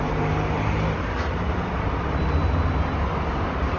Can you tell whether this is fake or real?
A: real